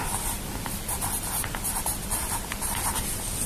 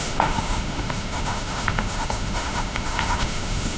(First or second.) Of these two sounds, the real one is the first